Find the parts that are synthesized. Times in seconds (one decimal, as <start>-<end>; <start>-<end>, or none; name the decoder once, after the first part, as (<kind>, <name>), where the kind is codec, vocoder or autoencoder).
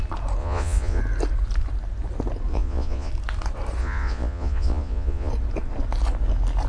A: 0.4-1.0 (vocoder, Vocos); 2.5-3.1; 3.8-5.3